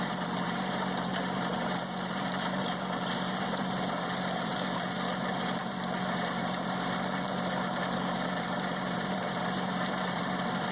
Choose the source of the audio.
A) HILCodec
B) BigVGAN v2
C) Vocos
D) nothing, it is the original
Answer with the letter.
B